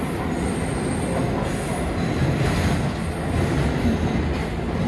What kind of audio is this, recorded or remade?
recorded